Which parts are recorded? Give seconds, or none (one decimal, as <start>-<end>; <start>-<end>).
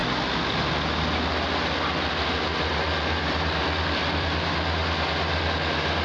0.0-4.0; 4.5-6.0